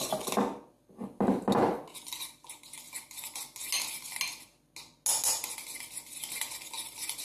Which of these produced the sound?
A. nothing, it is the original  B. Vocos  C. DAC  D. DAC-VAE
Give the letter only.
A